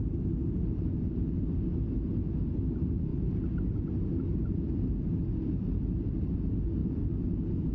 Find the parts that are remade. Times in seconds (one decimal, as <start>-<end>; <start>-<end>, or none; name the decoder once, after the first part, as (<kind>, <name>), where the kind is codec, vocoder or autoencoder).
none